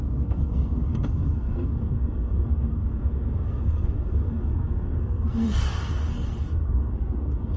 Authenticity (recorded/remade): remade